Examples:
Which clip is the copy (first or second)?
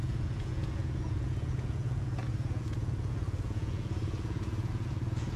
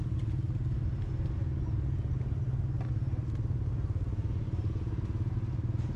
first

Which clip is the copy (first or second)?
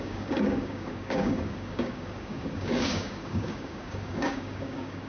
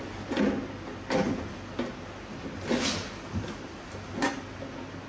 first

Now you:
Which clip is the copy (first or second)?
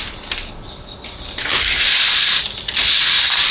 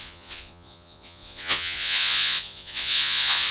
second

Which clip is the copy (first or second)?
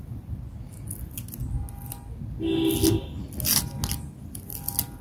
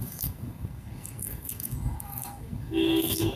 second